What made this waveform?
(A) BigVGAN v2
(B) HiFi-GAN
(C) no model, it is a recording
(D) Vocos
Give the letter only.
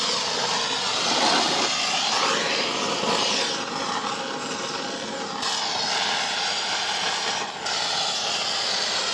C